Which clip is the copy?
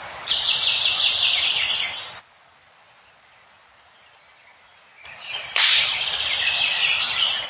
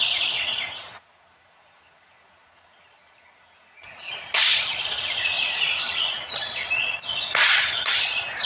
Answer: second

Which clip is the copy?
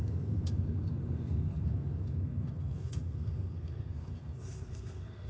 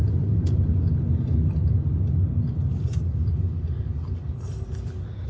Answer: first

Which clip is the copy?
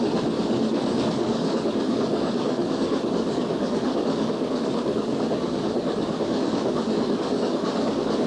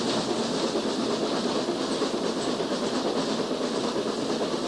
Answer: first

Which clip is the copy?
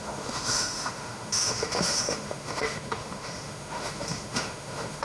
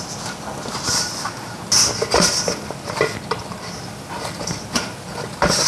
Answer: first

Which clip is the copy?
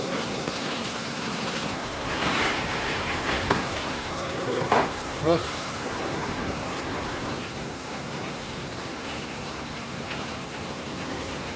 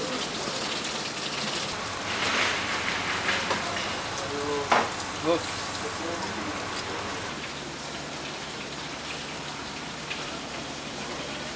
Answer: first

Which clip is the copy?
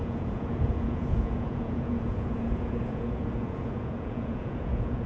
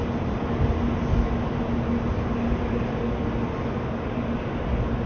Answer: first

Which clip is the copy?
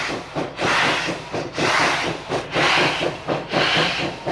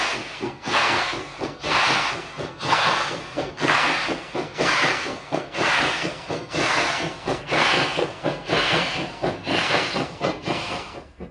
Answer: second